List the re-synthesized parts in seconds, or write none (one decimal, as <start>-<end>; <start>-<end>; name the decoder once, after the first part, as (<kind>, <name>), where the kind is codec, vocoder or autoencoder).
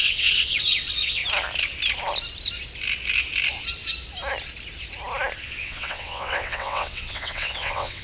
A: 0.0-1.2 (vocoder, WaveNeXt); 5.4-8.0